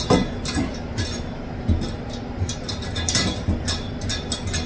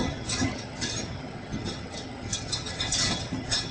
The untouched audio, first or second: first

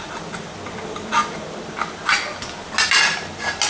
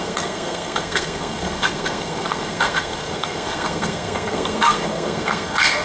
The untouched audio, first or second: first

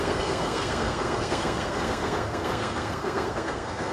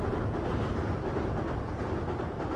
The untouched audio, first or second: second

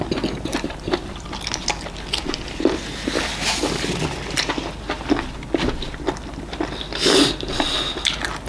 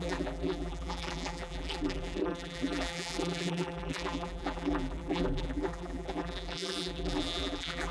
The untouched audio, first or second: first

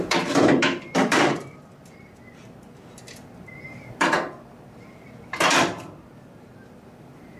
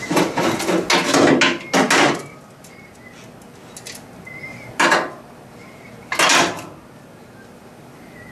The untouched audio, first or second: second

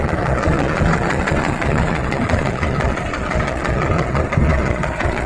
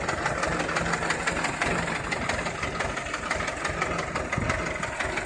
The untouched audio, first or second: second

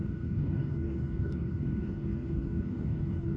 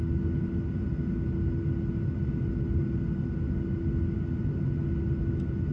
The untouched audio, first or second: second